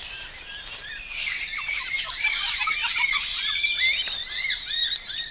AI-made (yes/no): yes